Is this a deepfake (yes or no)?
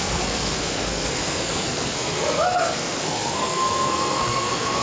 yes